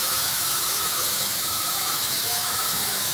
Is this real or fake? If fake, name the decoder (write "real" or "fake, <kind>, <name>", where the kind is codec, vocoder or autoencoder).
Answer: fake, autoencoder, DAC-VAE